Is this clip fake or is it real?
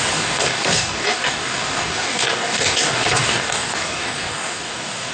fake